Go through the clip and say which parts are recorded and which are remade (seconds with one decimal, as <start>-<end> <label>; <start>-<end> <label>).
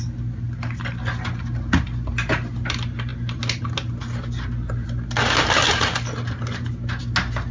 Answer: 0.0-7.5 recorded